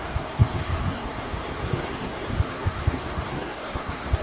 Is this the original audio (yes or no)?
no